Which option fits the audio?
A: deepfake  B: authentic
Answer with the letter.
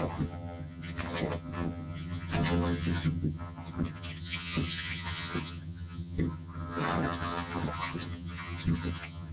A